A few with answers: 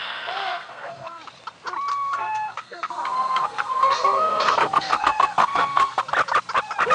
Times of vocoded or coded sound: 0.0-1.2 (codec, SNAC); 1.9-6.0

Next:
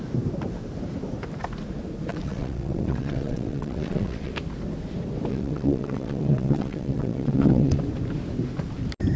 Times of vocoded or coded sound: 2.1-4.3 (vocoder, WaveNeXt); 5.3-7.8

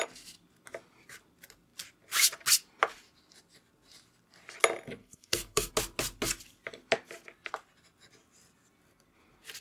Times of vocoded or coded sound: 5.0-5.7 (codec, SNAC)